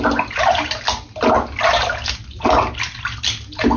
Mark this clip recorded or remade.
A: recorded